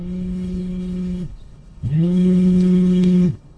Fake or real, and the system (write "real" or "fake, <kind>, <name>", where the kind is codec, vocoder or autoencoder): fake, codec, HILCodec